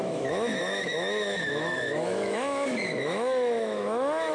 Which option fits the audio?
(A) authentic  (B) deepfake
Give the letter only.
B